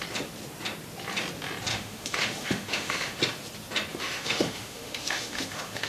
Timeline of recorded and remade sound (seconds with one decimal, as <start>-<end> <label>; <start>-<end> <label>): 0.0-1.7 recorded; 1.7-3.2 remade; 3.2-3.9 recorded; 3.9-5.9 remade